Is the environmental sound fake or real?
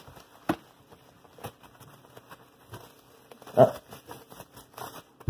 real